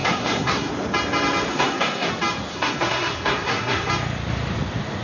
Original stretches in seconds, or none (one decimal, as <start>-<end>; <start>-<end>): 0.7-1.5; 2.1-2.5; 3.9-5.0